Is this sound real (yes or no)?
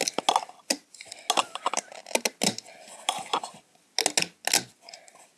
yes